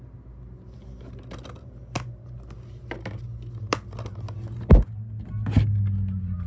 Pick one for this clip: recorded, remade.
recorded